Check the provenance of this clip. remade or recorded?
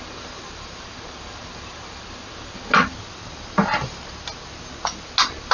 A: recorded